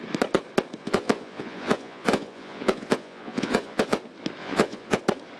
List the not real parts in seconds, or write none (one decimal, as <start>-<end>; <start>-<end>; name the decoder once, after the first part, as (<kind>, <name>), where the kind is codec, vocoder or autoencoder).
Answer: 0.8-4.0 (vocoder, Vocos); 4.4-5.0